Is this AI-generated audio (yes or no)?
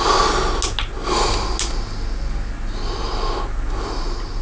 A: no